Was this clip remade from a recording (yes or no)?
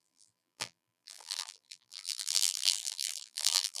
yes